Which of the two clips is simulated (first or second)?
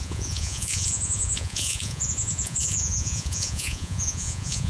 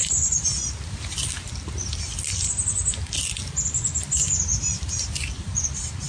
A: first